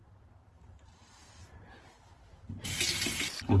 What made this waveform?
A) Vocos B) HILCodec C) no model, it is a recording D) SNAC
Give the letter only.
C